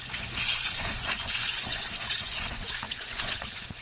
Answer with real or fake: fake